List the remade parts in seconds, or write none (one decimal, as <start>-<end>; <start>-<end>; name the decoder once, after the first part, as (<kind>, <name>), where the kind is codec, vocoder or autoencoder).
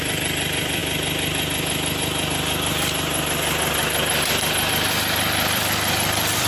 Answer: 0.0-0.8 (vocoder, BigVGAN v2); 4.7-6.5